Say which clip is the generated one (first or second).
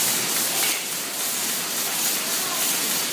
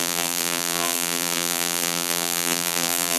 second